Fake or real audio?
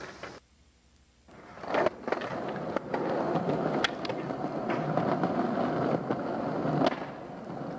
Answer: real